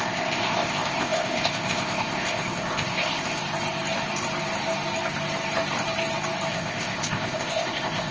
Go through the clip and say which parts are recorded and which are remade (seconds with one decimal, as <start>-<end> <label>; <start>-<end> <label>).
0.0-3.4 remade; 3.4-6.5 recorded; 6.5-8.1 remade